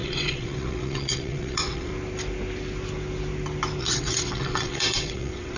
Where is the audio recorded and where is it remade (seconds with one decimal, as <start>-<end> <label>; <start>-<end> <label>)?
0.0-1.9 remade; 1.9-3.8 recorded; 3.8-5.6 remade